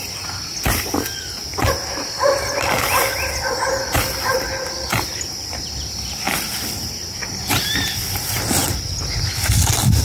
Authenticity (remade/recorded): recorded